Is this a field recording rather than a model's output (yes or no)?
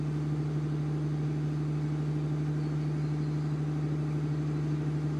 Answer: yes